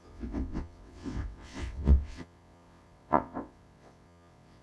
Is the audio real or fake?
fake